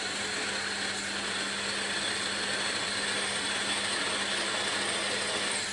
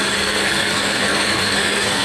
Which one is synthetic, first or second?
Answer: second